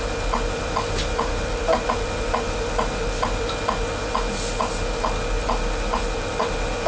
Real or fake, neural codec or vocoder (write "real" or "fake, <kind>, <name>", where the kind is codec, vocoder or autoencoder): real